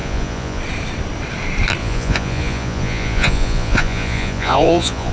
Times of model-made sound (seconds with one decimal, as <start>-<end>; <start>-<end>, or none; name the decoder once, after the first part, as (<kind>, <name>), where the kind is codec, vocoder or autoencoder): 0.0-0.6 (vocoder, Vocos); 1.8-5.1